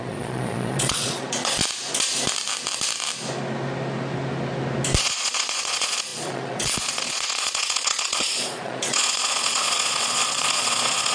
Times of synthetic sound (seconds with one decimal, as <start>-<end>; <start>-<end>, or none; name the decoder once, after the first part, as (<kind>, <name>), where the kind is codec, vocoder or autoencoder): 0.0-1.6 (vocoder, Vocos); 5.0-11.1